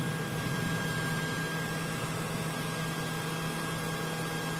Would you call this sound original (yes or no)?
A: yes